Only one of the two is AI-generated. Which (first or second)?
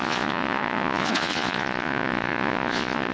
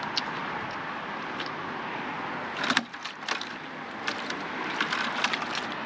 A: first